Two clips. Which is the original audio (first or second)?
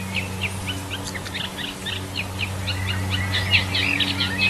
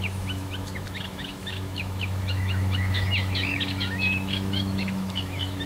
first